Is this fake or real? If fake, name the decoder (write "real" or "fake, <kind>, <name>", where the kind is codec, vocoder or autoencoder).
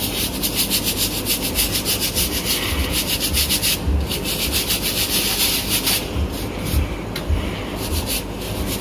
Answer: real